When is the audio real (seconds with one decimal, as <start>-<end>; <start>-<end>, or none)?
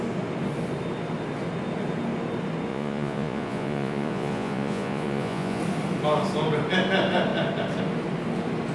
0.0-2.7; 5.6-8.7